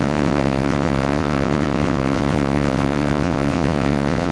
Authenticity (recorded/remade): remade